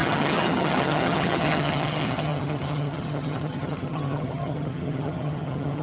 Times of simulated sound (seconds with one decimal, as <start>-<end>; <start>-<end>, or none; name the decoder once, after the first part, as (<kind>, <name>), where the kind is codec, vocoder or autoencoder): 0.0-5.8 (vocoder, HiFi-GAN)